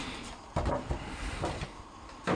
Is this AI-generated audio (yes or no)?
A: no